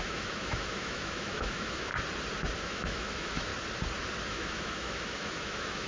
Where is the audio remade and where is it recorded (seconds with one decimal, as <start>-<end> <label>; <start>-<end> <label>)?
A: 0.0-1.9 remade; 1.9-2.6 recorded; 2.6-3.5 remade; 3.5-4.3 recorded; 4.3-5.9 remade